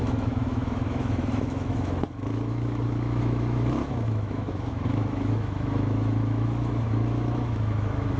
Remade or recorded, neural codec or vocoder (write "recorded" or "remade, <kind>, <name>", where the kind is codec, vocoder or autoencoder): remade, autoencoder, DAC-VAE